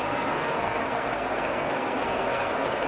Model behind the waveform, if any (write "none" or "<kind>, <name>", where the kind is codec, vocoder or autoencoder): codec, SNAC